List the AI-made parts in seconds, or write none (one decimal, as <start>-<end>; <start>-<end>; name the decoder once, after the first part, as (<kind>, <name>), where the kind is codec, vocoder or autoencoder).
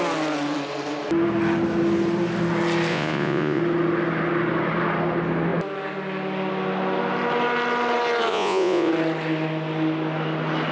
2.9-3.6 (vocoder, Vocos); 8.3-8.9